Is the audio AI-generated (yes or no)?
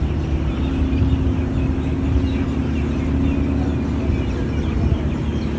no